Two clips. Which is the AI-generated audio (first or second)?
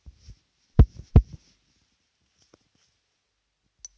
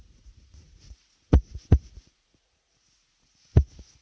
second